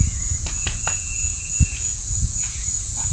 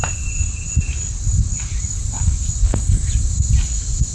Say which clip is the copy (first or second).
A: first